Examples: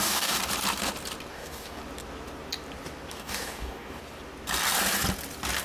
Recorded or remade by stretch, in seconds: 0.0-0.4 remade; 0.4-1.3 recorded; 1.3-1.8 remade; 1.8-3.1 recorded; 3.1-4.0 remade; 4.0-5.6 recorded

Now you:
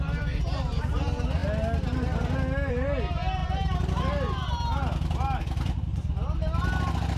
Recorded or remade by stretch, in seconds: 0.0-7.2 recorded

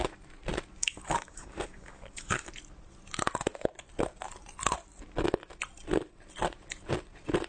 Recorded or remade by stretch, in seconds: 0.0-0.8 recorded; 0.8-2.5 remade; 2.5-7.5 recorded

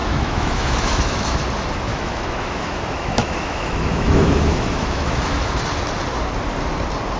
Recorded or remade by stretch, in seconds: 0.0-1.4 remade; 1.4-1.9 recorded; 1.9-5.5 remade; 5.5-7.2 recorded